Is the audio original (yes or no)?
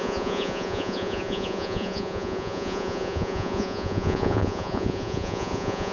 no